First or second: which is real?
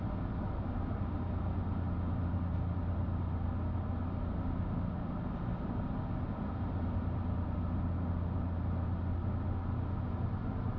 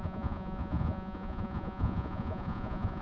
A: first